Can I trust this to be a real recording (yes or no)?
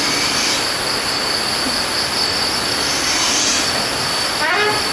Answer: yes